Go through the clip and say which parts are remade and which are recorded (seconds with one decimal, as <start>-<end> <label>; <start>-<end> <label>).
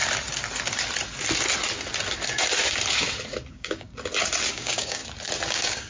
0.0-3.5 recorded; 3.5-3.9 remade; 3.9-4.5 recorded; 4.5-5.0 remade; 5.0-5.5 recorded; 5.5-5.9 remade